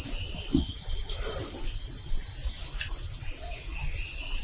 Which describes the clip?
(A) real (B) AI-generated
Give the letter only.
A